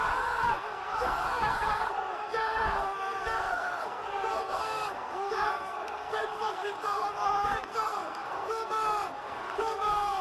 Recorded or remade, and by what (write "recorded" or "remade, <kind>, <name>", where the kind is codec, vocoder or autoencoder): remade, codec, SNAC